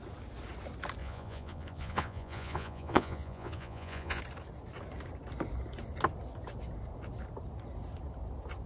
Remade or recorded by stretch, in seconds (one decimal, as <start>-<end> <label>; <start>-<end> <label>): 0.0-1.0 recorded; 1.0-4.2 remade; 4.2-8.7 recorded